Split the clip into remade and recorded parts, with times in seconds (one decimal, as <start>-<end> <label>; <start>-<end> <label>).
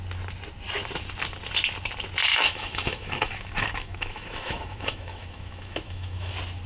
0.0-2.3 recorded; 2.3-6.3 remade; 6.3-6.7 recorded